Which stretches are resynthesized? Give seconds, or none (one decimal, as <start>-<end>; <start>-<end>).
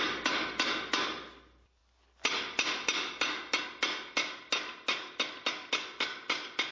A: none